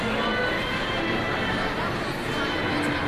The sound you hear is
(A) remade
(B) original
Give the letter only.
B